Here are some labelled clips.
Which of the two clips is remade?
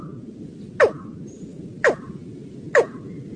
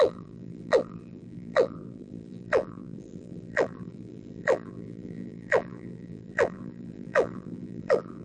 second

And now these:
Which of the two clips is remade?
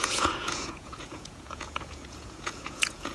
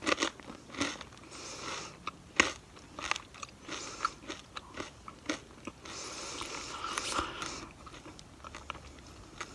first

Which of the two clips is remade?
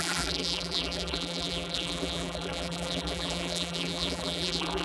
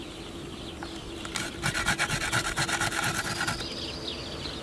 first